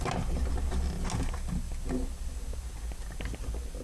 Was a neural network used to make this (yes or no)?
no